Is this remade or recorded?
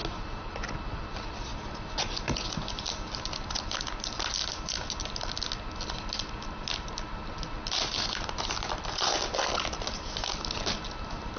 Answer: recorded